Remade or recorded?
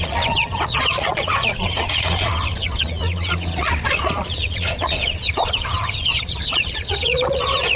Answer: remade